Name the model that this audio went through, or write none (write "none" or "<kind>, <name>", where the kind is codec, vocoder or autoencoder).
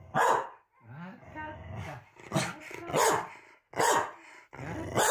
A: none